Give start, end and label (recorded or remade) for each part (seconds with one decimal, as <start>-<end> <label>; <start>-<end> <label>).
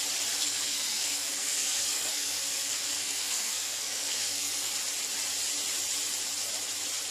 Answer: 0.0-0.4 recorded; 0.4-4.7 remade; 4.7-7.1 recorded